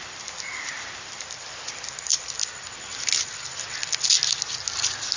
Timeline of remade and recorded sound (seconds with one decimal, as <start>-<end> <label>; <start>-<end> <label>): 0.0-2.1 remade; 2.1-5.2 recorded